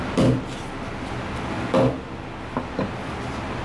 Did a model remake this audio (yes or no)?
no